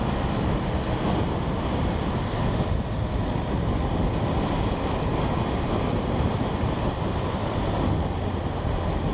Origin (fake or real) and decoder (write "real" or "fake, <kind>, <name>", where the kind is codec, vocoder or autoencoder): real